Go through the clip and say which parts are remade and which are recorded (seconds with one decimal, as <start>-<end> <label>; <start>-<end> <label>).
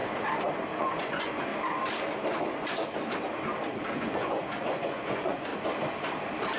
0.0-0.8 recorded; 0.8-1.5 remade; 1.5-3.9 recorded; 3.9-5.5 remade; 5.5-6.6 recorded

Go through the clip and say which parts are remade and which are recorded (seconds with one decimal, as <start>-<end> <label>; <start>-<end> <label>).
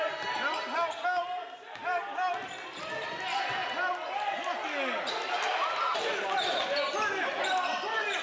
0.0-8.2 recorded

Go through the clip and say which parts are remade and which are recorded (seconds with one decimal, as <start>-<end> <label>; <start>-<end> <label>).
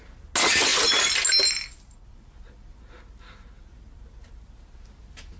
0.0-5.4 recorded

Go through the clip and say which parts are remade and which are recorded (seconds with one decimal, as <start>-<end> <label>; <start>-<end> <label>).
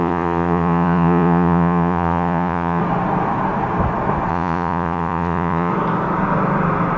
0.0-2.8 remade; 2.8-4.3 recorded; 4.3-5.7 remade; 5.7-7.0 recorded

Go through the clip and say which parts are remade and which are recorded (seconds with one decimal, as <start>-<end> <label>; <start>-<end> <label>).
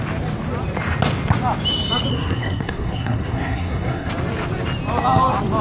0.0-2.1 recorded; 2.1-4.1 remade; 4.1-5.6 recorded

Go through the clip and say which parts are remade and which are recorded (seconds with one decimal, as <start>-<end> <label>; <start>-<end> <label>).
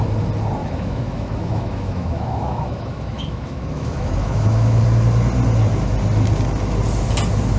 0.0-0.6 recorded; 0.6-4.8 remade; 4.8-7.6 recorded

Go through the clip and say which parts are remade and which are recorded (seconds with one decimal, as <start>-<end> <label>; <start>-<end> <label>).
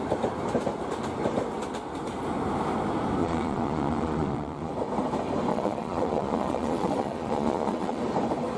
0.0-3.2 recorded; 3.2-4.7 remade; 4.7-5.5 recorded; 5.5-8.0 remade; 8.0-8.6 recorded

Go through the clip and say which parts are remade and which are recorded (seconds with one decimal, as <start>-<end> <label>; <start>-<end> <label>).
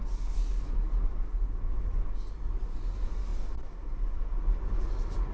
0.0-5.3 recorded